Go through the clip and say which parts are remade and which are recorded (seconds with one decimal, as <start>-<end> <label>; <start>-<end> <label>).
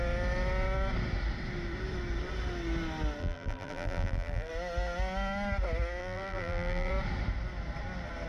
0.0-3.2 recorded; 3.2-4.5 remade; 4.5-6.0 recorded; 6.0-6.9 remade; 6.9-8.3 recorded